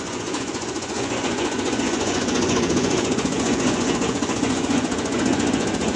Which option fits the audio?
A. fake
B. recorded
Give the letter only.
A